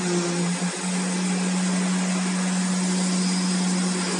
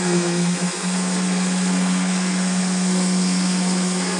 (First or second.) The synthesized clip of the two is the second